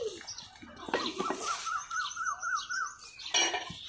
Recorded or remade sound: recorded